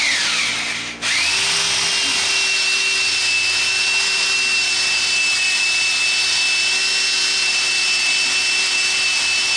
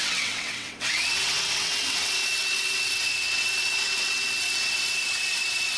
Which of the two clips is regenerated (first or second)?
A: second